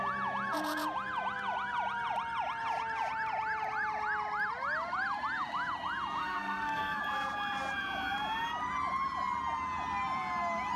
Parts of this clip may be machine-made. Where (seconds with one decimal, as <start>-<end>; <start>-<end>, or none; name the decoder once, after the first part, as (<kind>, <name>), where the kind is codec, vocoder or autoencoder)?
6.2-7.0 (codec, SNAC)